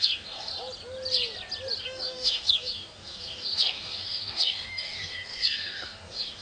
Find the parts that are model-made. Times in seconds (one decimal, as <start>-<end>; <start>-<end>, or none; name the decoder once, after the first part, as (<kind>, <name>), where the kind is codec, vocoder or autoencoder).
0.0-0.5 (codec, DAC); 1.8-6.4